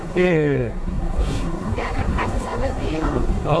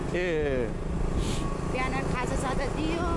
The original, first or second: second